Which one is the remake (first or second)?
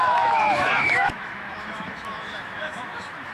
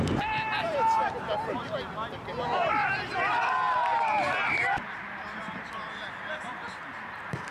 first